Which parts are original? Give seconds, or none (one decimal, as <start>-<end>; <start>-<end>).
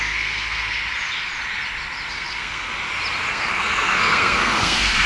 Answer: 0.8-2.1; 2.7-3.3